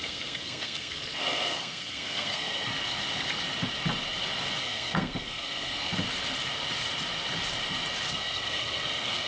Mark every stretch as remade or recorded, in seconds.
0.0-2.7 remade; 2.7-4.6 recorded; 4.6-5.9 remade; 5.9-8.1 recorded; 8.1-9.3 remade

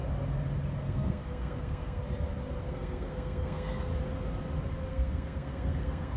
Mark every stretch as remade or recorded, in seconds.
0.0-0.8 recorded; 0.8-2.0 remade; 2.0-2.6 recorded; 2.6-3.9 remade; 3.9-4.9 recorded; 4.9-6.2 remade

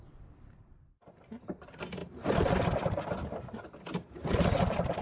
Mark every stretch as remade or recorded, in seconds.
0.0-5.0 recorded

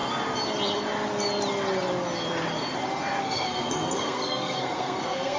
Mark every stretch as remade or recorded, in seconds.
0.0-3.2 recorded; 3.2-5.4 remade